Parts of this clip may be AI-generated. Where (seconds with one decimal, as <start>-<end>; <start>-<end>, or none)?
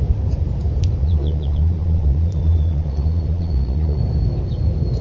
1.0-4.0